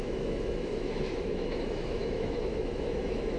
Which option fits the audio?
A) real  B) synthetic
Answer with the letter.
B